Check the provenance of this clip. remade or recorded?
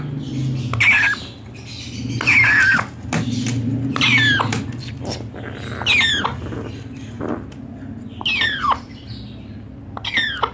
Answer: recorded